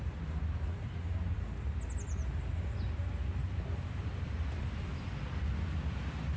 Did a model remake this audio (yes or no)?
no